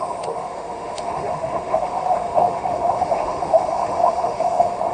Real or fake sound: fake